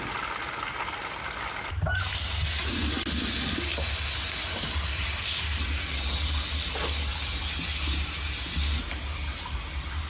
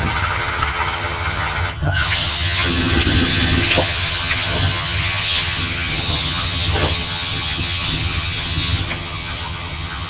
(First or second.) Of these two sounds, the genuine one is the first